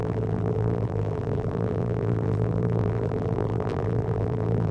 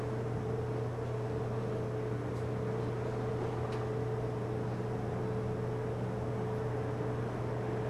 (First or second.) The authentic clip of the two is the second